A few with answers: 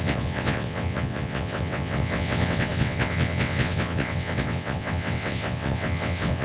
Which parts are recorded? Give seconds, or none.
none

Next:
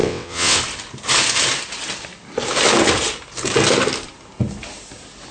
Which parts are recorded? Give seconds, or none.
0.6-5.3

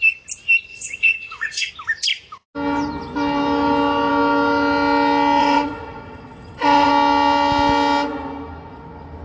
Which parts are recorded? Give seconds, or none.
0.0-0.7; 1.7-5.4; 6.9-9.2

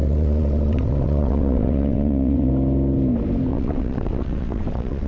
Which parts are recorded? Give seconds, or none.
2.5-3.5

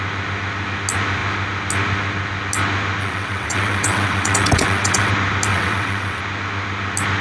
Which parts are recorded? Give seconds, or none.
0.0-3.0; 5.1-5.5; 6.2-7.2

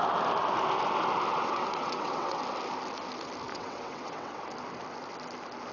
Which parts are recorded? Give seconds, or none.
0.0-1.3; 2.4-3.5; 4.4-5.7